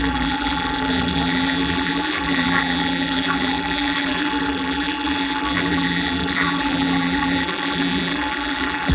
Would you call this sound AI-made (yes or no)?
yes